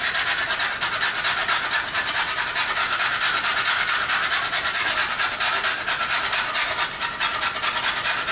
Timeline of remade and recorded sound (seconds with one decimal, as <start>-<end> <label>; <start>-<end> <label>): 0.0-8.3 recorded

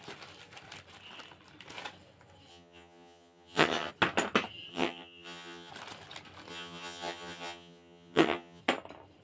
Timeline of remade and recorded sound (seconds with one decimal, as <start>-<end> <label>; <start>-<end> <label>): 0.0-2.5 recorded; 2.5-3.9 remade; 3.9-4.7 recorded; 4.7-5.7 remade; 5.7-6.5 recorded; 6.5-8.6 remade; 8.6-9.2 recorded

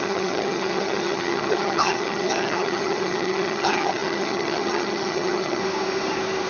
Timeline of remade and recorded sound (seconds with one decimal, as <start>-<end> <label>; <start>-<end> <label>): 0.0-5.6 remade; 5.6-6.5 recorded